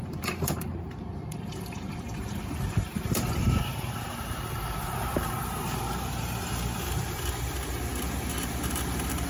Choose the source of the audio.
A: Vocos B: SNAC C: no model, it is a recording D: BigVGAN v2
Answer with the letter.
D